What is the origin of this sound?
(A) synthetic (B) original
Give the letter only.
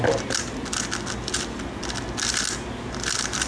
B